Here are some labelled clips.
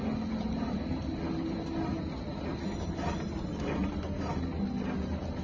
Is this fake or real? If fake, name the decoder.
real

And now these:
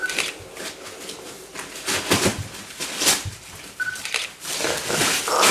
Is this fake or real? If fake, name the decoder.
real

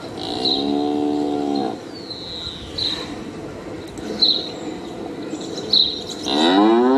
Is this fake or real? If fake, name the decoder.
real